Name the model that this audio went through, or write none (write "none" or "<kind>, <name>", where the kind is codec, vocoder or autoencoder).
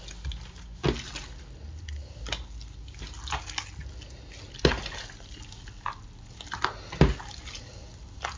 none